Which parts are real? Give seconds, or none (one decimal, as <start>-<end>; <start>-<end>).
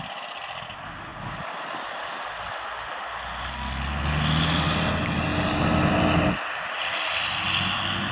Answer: 0.0-8.1